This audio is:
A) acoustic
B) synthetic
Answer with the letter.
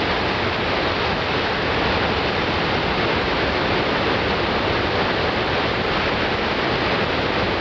A